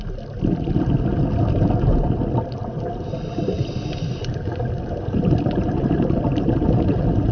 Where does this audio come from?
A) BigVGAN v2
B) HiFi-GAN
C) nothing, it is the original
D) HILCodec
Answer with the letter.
C